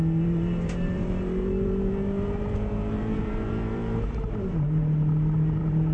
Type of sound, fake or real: fake